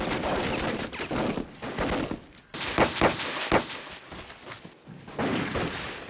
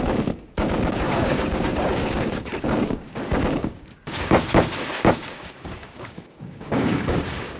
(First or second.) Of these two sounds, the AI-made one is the second